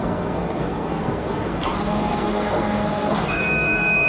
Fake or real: fake